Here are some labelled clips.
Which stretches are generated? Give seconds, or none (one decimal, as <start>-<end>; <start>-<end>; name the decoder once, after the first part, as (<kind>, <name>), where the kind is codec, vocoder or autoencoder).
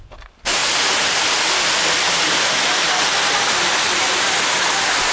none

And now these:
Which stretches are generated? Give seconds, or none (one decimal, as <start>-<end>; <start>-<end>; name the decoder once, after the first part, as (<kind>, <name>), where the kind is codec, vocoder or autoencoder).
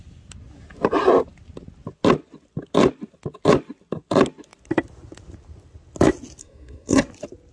6.4-7.0 (codec, SNAC)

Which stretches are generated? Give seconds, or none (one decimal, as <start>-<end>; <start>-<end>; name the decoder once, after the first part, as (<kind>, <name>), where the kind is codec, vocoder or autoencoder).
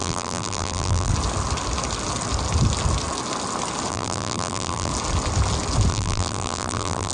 0.0-1.1 (vocoder, BigVGAN v2); 3.9-4.9; 5.9-7.1